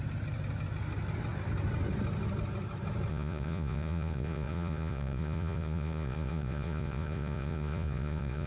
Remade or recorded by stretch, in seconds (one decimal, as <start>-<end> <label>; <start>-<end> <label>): 0.0-3.1 recorded; 3.1-8.5 remade